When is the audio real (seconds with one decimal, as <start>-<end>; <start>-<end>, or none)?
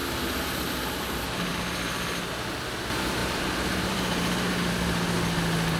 0.0-5.8